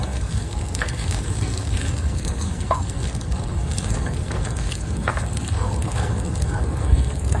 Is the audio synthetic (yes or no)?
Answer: yes